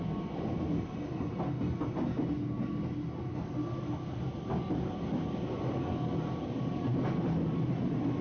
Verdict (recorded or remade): recorded